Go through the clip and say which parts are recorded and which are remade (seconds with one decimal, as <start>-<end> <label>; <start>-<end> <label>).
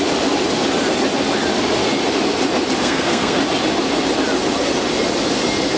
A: 0.0-2.8 recorded; 2.8-3.4 remade; 3.4-5.8 recorded